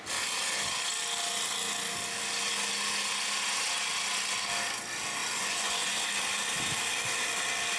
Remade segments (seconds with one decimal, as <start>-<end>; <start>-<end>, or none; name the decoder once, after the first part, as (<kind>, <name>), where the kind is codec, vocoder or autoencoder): 5.2-6.1 (vocoder, Vocos)